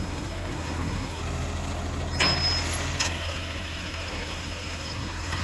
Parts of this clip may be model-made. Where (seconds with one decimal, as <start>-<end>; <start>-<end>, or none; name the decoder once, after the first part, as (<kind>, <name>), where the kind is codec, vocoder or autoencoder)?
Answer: 0.0-1.2 (codec, SNAC); 3.0-5.4